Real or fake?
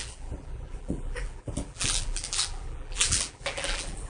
fake